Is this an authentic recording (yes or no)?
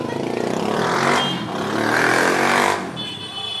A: yes